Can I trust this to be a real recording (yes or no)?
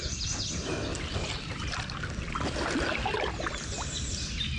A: yes